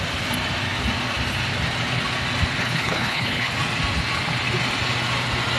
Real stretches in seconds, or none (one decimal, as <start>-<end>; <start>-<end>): 0.0-2.6; 3.5-5.6